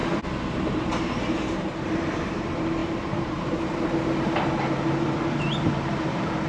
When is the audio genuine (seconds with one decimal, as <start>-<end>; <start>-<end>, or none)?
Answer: 0.0-0.6